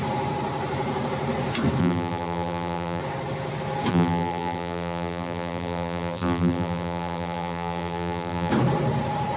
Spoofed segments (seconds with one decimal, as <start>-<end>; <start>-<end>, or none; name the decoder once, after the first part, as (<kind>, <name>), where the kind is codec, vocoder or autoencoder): 1.8-3.0 (vocoder, BigVGAN v2); 3.9-8.5